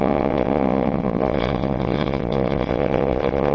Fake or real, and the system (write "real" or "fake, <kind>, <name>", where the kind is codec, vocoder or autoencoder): fake, vocoder, WaveNeXt